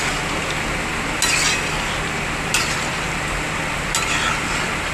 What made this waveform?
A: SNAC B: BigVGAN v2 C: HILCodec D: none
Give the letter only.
D